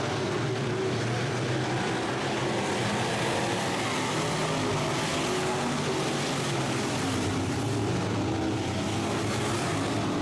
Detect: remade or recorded recorded